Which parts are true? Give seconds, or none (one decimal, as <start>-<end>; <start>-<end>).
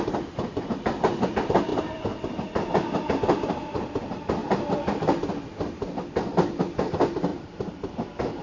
0.0-1.7; 3.7-4.4; 5.3-7.3; 7.9-8.4